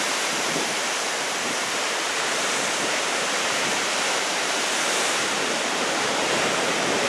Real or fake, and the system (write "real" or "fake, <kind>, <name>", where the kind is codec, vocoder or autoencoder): fake, vocoder, BigVGAN v2